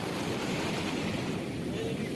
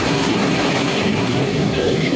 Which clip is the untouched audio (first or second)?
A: first